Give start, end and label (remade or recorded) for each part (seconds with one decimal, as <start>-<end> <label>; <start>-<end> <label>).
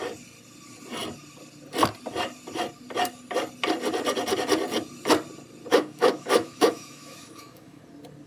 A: 0.0-5.7 recorded; 5.7-7.8 remade; 7.8-8.3 recorded